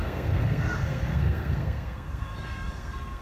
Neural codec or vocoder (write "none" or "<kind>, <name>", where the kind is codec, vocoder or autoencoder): codec, SNAC